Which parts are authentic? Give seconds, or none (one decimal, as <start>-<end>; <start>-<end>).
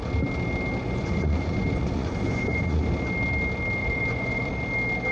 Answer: 0.0-0.8; 2.8-3.8; 4.5-5.1